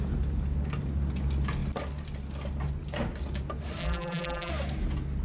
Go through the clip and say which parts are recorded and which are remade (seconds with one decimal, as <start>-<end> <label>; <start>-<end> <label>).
0.0-3.8 recorded; 3.8-4.5 remade; 4.5-5.2 recorded

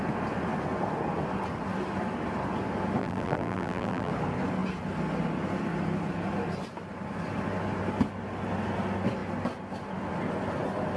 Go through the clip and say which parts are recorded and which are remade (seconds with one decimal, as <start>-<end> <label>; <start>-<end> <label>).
0.0-3.0 recorded; 3.0-4.1 remade; 4.1-11.0 recorded

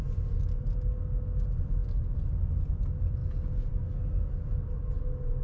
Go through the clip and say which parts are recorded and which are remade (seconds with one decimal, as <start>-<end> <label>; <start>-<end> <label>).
0.0-5.4 recorded

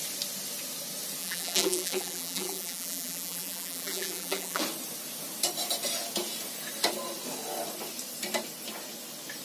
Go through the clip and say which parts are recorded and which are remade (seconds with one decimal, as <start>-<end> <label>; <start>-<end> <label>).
0.0-1.2 recorded; 1.2-4.6 remade; 4.6-9.4 recorded